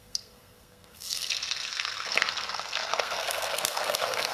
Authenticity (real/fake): fake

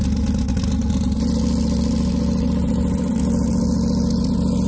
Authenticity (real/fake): real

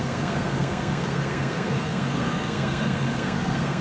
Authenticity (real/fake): fake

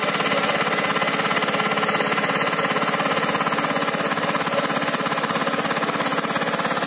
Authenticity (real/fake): real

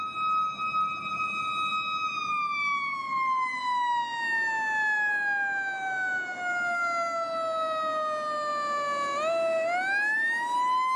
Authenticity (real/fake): real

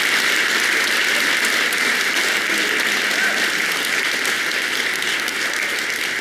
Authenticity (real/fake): real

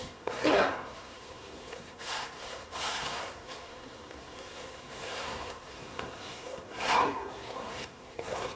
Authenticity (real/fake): fake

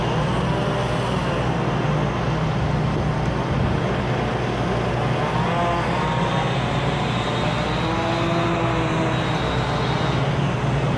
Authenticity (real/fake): real